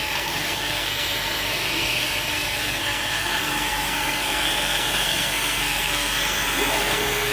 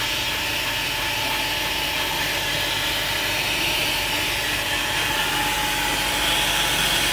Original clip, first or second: second